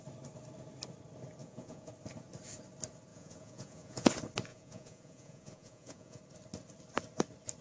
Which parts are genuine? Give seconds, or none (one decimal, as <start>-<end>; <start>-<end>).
0.0-1.4; 1.9-3.1; 4.1-4.5; 6.2-7.6